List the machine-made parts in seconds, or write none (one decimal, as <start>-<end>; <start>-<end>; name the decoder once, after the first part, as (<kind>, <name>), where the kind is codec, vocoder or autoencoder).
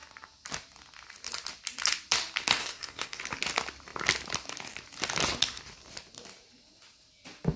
2.6-3.2 (codec, SNAC)